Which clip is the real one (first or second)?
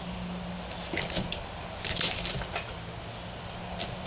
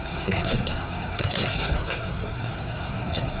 first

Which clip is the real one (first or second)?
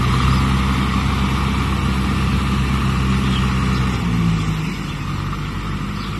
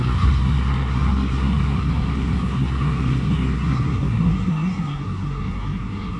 first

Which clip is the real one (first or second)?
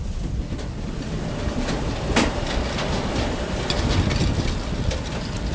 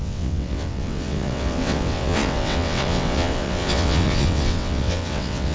first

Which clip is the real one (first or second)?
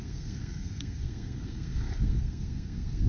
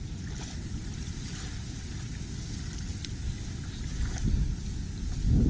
second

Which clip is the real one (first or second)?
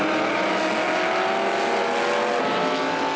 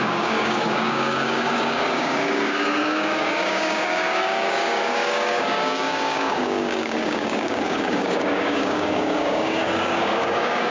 first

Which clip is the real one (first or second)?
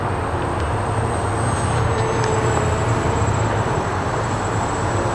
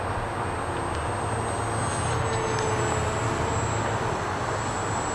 second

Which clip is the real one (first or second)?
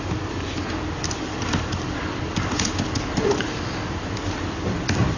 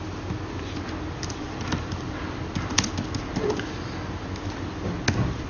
second